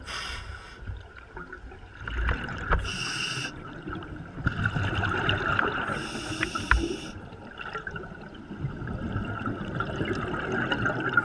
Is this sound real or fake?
real